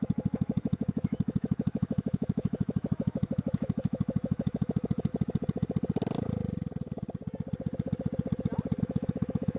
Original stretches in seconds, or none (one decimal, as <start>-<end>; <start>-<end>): 5.1-8.8